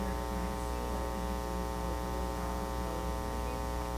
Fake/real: real